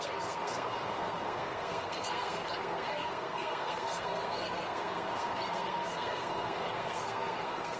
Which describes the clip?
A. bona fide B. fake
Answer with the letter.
B